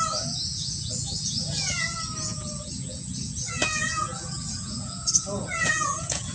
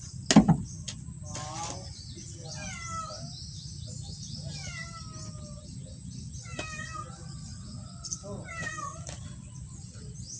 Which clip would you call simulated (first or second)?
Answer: first